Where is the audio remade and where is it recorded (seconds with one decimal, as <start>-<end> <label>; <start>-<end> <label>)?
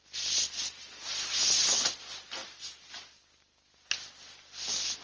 0.0-0.8 recorded; 0.8-1.3 remade; 1.3-2.4 recorded; 2.4-3.2 remade; 3.2-5.0 recorded